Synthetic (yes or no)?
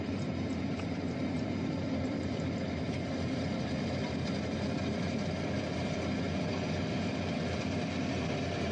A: yes